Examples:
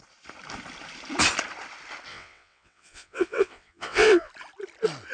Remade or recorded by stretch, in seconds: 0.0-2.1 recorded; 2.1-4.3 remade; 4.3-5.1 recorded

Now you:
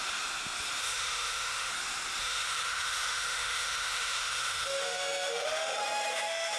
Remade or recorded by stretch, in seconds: 0.0-0.8 recorded; 0.8-1.7 remade; 1.7-2.2 recorded; 2.2-6.6 remade

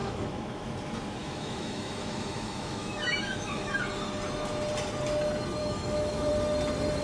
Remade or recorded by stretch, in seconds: 0.0-0.7 remade; 0.7-1.2 recorded; 1.2-3.8 remade; 3.8-5.6 recorded; 5.6-6.3 remade; 6.3-7.0 recorded

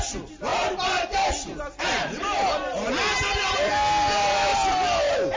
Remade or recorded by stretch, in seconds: 0.0-0.5 recorded; 0.5-3.7 remade; 3.7-4.5 recorded; 4.5-5.4 remade

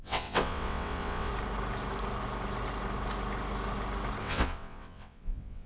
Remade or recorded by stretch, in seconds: 0.0-1.3 remade; 1.3-4.2 recorded; 4.2-5.7 remade

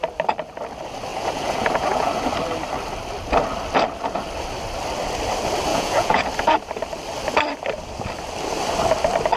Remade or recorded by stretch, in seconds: 0.0-1.1 recorded; 1.1-2.3 remade; 2.3-5.7 recorded; 5.7-6.3 remade; 6.3-9.4 recorded

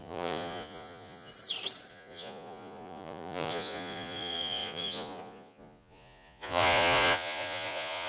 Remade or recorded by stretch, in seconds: 0.0-1.3 remade; 1.3-1.9 recorded; 1.9-8.1 remade

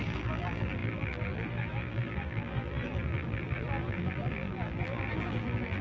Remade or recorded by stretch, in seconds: 0.0-5.8 remade